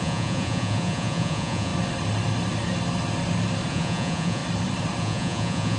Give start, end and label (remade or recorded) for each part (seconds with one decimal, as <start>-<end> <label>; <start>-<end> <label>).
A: 0.0-1.7 remade; 1.7-3.7 recorded; 3.7-4.4 remade; 4.4-5.0 recorded; 5.0-5.8 remade